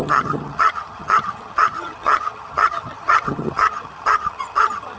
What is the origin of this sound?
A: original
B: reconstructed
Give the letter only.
B